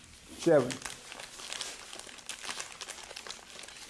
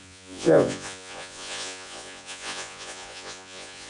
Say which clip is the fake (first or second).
second